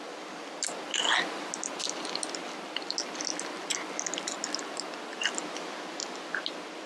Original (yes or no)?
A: yes